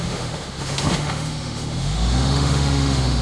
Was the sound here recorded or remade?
remade